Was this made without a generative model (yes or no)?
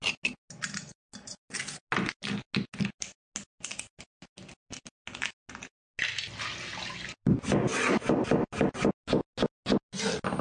yes